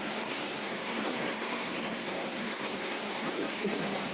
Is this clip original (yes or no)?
no